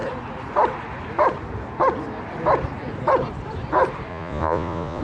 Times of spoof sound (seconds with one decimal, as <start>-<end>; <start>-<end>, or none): 4.1-5.0